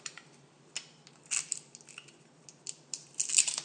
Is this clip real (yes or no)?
yes